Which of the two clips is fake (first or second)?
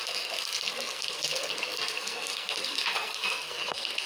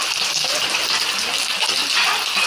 first